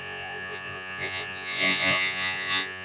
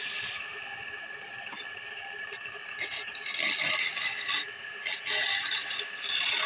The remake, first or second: first